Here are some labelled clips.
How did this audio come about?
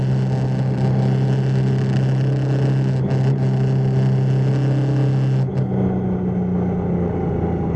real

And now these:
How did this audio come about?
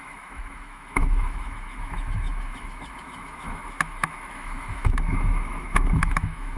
fake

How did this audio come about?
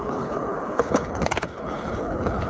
fake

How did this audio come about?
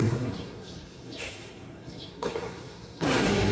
fake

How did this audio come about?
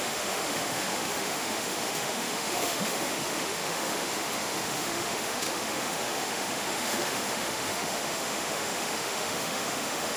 fake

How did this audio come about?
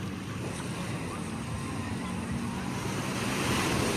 real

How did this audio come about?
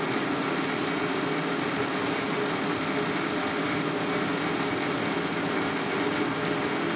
real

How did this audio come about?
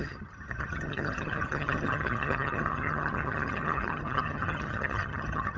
fake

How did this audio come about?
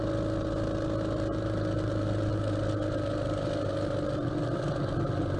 real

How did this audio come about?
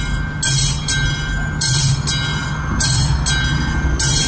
real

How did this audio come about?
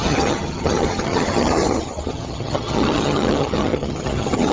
fake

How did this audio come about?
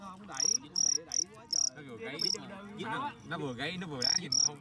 real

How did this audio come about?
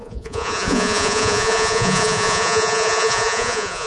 fake